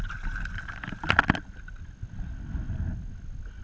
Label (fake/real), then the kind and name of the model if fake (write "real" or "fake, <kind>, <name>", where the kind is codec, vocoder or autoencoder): real